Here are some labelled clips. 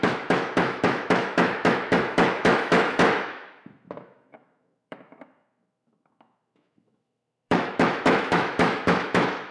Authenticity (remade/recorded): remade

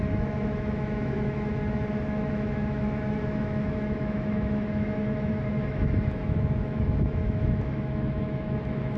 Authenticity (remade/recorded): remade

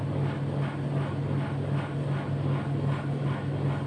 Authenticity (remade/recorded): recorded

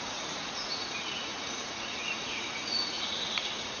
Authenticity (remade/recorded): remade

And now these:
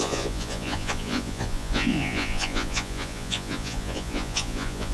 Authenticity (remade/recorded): remade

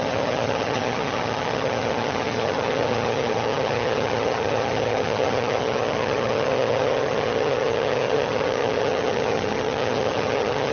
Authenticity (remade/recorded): remade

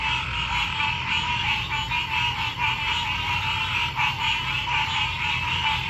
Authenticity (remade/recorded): recorded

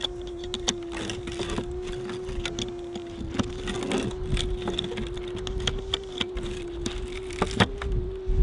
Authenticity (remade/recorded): recorded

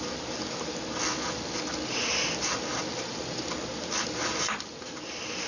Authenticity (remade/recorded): recorded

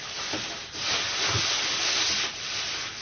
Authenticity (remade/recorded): recorded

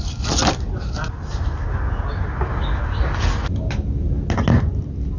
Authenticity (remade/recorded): recorded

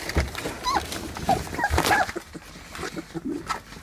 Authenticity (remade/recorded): recorded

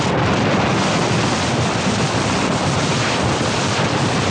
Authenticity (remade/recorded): recorded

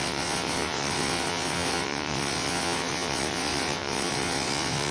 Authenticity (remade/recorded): remade